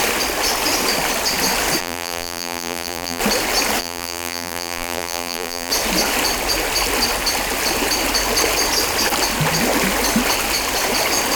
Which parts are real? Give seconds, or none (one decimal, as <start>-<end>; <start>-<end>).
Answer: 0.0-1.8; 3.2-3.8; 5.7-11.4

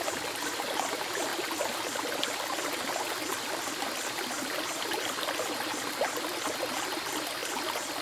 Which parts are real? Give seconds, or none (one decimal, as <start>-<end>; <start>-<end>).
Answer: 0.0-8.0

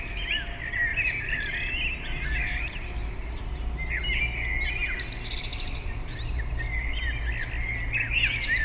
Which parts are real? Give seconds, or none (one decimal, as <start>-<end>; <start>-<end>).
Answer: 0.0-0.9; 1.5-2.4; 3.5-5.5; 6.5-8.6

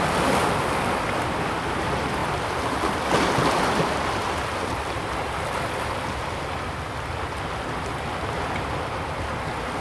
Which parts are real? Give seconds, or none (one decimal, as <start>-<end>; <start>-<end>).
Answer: 0.0-9.8

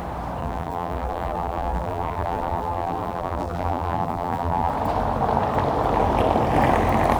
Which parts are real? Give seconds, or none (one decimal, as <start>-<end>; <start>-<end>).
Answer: 0.0-0.4; 4.7-7.2

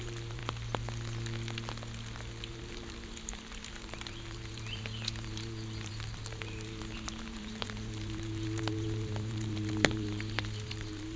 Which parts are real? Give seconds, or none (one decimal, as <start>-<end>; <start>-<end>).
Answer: 0.4-2.5